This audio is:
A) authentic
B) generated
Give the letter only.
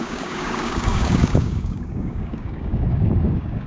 B